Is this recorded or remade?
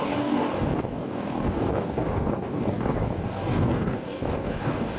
remade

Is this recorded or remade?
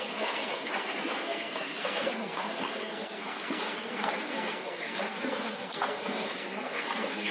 remade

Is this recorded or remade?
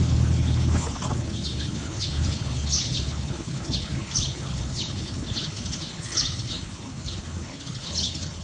remade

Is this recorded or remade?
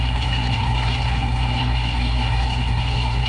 remade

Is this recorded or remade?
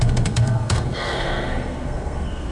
remade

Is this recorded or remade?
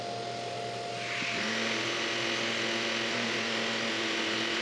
recorded